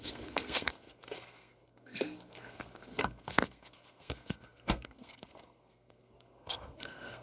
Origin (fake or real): fake